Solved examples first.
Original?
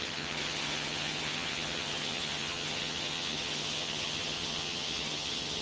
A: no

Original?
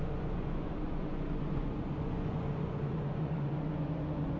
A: no